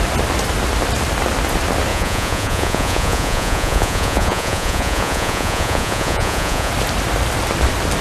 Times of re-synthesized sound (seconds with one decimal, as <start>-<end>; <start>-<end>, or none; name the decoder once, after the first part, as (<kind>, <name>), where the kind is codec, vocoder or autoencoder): 1.9-6.7 (vocoder, Vocos)